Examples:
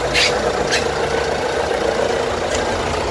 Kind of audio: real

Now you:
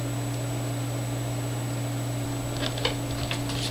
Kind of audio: real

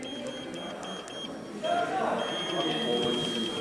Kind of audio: real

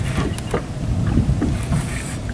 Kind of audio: real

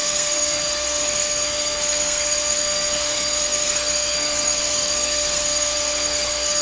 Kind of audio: fake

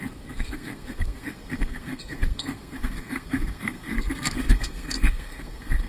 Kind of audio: fake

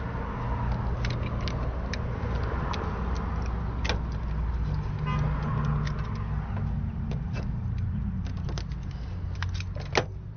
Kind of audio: real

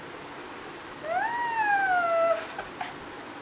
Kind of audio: real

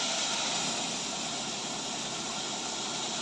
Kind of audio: real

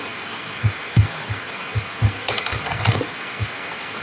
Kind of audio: fake